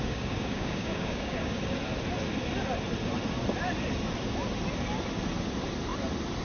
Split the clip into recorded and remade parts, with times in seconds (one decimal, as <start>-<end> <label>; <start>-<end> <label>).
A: 0.0-1.6 remade; 1.6-6.4 recorded